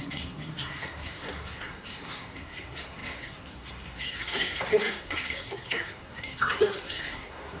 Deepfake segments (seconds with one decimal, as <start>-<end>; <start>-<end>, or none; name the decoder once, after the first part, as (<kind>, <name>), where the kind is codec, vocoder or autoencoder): 0.0-7.6 (codec, SNAC)